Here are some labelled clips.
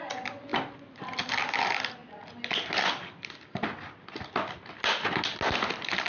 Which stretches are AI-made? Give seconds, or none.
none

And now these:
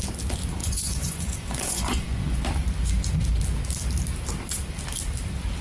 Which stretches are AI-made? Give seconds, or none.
0.6-2.4 (vocoder, Vocos)

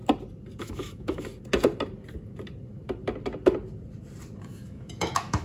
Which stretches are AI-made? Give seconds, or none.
0.6-1.3 (autoencoder, DAC-VAE); 4.4-5.4

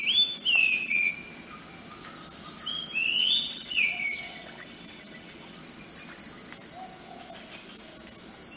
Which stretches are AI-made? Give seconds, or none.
0.6-1.1 (vocoder, WaveNeXt); 3.2-5.6

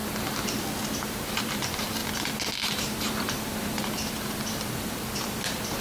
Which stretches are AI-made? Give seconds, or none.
0.9-2.0 (vocoder, BigVGAN v2); 2.7-5.8

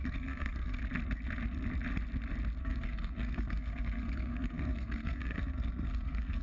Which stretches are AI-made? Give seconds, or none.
0.0-0.8 (codec, SNAC); 2.6-6.4